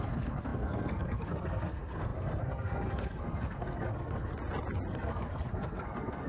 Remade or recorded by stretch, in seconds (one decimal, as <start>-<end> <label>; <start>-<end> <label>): 0.0-4.3 remade; 4.3-4.9 recorded; 4.9-6.3 remade